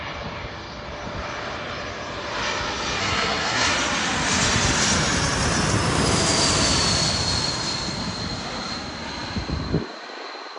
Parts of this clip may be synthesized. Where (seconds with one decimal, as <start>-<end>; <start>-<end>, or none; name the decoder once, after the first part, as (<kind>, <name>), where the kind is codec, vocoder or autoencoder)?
3.0-3.7 (codec, SNAC)